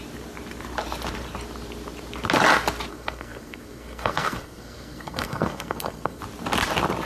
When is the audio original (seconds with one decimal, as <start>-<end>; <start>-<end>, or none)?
0.0-2.9; 6.2-7.1